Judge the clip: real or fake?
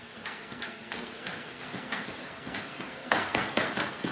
fake